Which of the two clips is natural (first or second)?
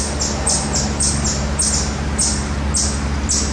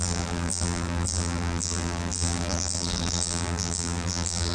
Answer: first